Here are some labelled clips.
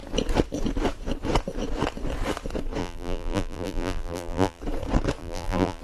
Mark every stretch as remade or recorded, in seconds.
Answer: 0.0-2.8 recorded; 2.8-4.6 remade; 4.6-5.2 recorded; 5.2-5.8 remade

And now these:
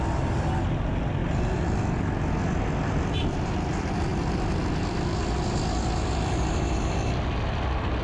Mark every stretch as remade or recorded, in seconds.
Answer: 0.0-8.0 recorded

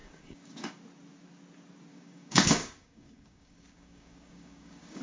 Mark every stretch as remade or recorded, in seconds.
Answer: 0.0-0.8 remade; 0.8-1.9 recorded; 1.9-5.0 remade

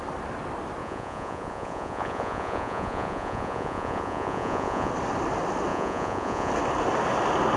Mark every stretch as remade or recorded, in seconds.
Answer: 0.0-0.8 recorded; 0.8-4.9 remade; 4.9-5.7 recorded; 5.7-6.5 remade; 6.5-7.6 recorded

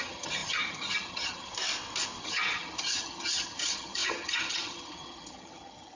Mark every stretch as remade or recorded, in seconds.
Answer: 0.0-1.5 remade; 1.5-2.2 recorded; 2.2-6.0 remade

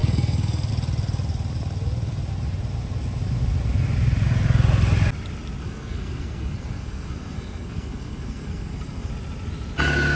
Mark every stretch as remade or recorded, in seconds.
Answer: 0.0-0.7 remade; 0.7-5.6 recorded; 5.6-9.1 remade; 9.1-10.2 recorded